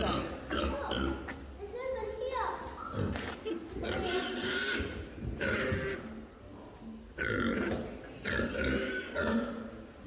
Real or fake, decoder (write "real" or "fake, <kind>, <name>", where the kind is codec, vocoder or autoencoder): real